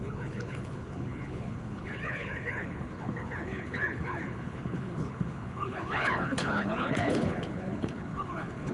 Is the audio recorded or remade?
remade